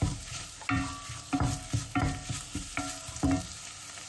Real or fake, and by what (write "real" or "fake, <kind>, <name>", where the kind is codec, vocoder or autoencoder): real